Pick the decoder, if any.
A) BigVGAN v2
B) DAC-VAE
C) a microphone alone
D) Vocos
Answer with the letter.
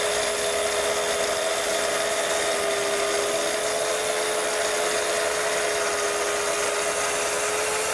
C